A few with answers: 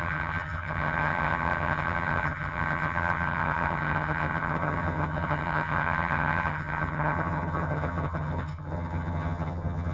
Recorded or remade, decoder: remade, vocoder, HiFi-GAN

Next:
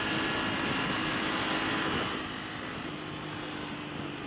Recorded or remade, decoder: recorded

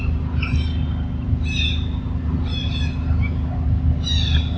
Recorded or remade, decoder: recorded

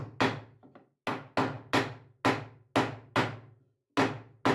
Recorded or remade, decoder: recorded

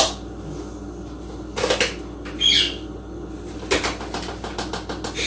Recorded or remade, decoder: recorded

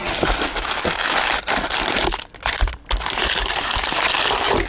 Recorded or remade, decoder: recorded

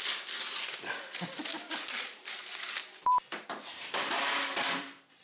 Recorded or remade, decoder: remade, vocoder, BigVGAN v2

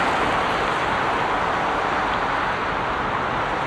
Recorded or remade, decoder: recorded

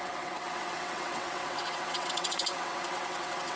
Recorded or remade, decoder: remade, vocoder, WaveNeXt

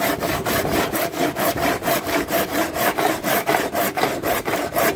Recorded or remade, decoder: remade, vocoder, BigVGAN v2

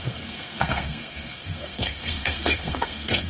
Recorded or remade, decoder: remade, codec, SNAC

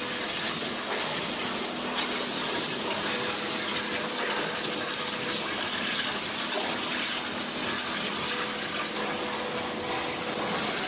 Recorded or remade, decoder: recorded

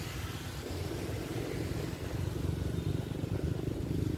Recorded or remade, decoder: recorded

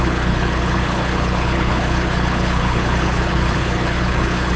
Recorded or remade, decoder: remade, codec, HILCodec